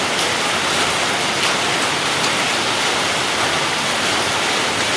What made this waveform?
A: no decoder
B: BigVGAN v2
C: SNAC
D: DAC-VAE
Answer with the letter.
A